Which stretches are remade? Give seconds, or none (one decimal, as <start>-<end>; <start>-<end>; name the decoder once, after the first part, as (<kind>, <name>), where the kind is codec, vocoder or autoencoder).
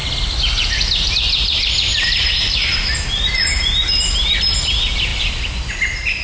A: 2.0-4.0 (vocoder, BigVGAN v2); 5.1-5.7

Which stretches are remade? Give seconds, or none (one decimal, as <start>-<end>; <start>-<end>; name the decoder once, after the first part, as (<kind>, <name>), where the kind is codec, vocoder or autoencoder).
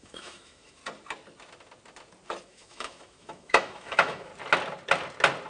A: 0.0-0.8 (autoencoder, DAC-VAE); 2.4-4.3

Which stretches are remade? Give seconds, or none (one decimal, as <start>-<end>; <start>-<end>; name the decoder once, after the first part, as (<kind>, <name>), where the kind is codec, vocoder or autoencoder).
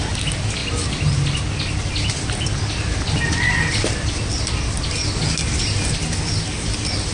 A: none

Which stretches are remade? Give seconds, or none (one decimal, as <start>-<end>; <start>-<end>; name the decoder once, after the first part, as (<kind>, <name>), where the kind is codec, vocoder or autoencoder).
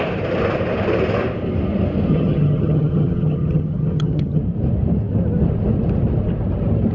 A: 2.1-4.4 (vocoder, HiFi-GAN)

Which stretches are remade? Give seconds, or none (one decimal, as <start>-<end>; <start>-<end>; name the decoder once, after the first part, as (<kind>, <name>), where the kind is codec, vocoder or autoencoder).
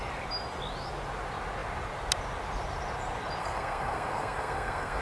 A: 3.4-5.0 (codec, SNAC)